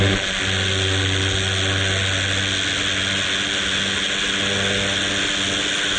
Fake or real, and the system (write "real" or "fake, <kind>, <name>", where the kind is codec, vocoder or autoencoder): real